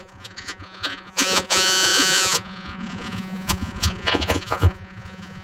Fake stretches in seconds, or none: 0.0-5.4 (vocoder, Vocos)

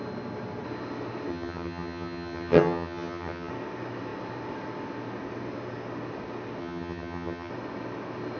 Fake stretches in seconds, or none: 1.3-3.5 (vocoder, HiFi-GAN); 6.6-7.5

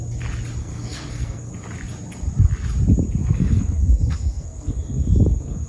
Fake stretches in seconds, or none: 0.6-1.5 (codec, SNAC); 3.2-5.7

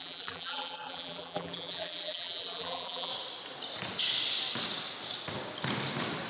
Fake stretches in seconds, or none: 0.0-3.1 (vocoder, BigVGAN v2)

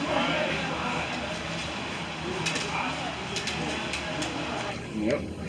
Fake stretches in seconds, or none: none

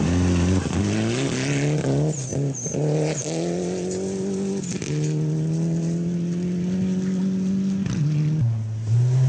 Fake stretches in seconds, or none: none